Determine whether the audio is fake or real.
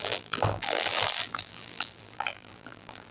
fake